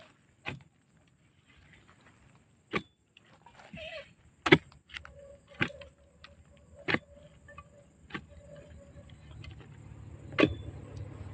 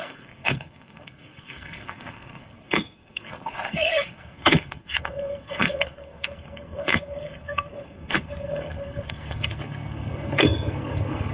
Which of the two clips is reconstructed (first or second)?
second